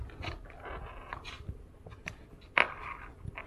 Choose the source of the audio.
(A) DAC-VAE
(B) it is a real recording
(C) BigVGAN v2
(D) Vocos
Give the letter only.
B